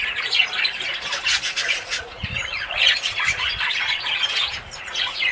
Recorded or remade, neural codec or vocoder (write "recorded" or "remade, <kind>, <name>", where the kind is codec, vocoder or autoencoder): remade, vocoder, Vocos